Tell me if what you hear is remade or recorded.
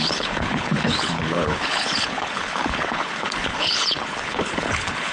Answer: remade